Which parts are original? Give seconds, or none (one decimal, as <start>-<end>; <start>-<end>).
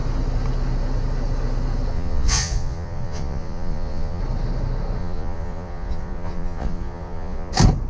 0.0-1.9; 4.2-5.0; 7.5-7.9